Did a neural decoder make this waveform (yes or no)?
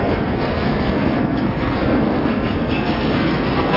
yes